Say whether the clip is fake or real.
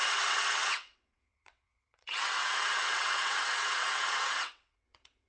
fake